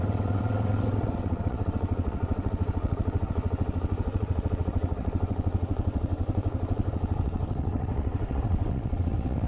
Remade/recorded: remade